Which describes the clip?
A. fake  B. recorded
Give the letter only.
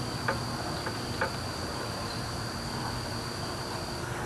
B